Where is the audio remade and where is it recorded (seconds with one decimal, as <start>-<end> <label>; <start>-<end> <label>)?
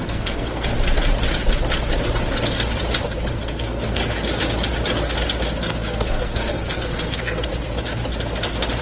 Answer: 0.0-0.7 remade; 0.7-3.3 recorded; 3.3-4.0 remade; 4.0-5.6 recorded; 5.6-7.5 remade; 7.5-8.8 recorded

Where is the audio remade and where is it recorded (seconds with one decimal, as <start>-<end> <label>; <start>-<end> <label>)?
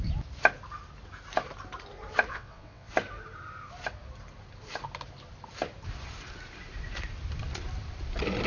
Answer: 0.0-2.3 recorded; 2.3-2.9 remade; 2.9-8.5 recorded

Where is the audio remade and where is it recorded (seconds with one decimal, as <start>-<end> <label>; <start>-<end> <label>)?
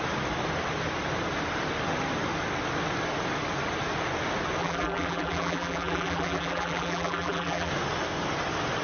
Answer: 0.0-4.6 recorded; 4.6-7.7 remade; 7.7-8.8 recorded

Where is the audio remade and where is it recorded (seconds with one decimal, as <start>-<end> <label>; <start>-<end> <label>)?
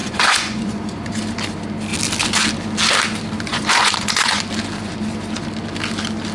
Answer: 0.0-1.1 remade; 1.1-3.5 recorded; 3.5-4.4 remade; 4.4-6.3 recorded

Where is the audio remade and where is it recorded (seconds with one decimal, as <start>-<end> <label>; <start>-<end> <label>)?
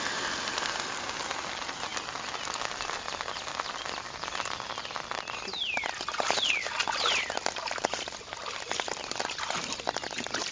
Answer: 0.0-10.5 recorded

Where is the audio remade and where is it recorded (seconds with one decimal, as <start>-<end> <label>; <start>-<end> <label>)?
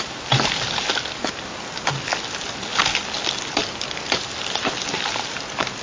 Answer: 0.0-5.8 recorded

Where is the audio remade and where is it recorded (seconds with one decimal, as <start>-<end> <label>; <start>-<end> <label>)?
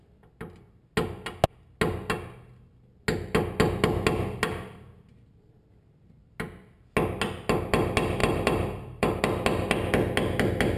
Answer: 0.0-8.2 recorded; 8.2-9.2 remade; 9.2-10.8 recorded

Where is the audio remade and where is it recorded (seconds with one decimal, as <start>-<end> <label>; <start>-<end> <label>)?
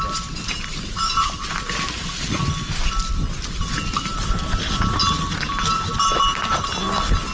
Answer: 0.0-4.1 recorded; 4.1-4.7 remade; 4.7-7.3 recorded